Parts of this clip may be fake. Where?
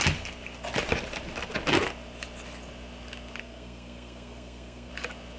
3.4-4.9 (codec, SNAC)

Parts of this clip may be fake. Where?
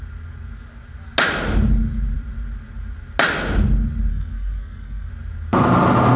4.1-5.1 (codec, SNAC)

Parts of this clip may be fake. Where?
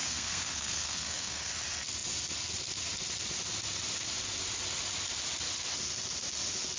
0.0-1.5 (codec, SNAC)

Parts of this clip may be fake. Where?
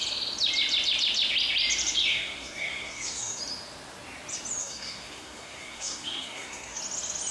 2.1-3.4 (codec, SNAC); 4.6-6.8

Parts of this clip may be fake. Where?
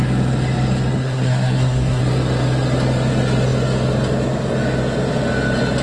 1.0-2.0 (codec, SNAC)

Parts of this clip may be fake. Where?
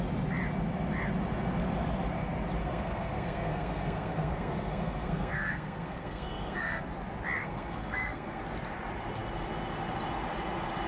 2.6-6.8 (codec, SNAC); 7.4-8.4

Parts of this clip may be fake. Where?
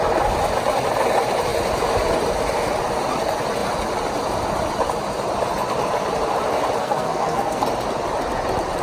6.8-7.6 (codec, SNAC)